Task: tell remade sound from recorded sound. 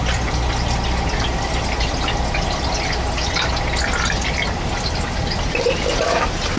recorded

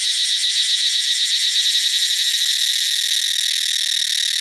recorded